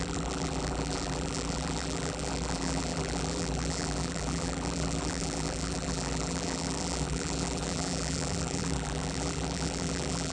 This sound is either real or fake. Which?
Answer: fake